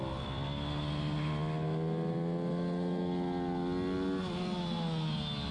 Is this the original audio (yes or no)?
yes